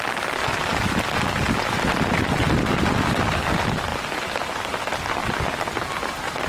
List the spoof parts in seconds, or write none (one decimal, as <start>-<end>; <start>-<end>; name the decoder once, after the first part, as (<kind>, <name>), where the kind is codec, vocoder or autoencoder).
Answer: 0.0-5.2 (vocoder, BigVGAN v2); 5.8-6.5